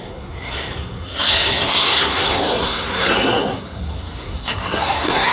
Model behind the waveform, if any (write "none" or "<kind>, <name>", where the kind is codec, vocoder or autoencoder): codec, SNAC